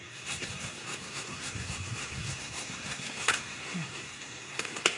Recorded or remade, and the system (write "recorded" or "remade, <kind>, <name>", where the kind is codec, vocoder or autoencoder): remade, codec, SNAC